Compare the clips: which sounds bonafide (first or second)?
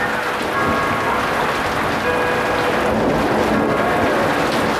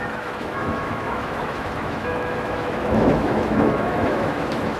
first